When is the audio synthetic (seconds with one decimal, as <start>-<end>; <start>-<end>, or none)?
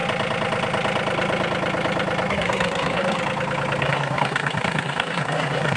2.3-3.2; 3.8-5.8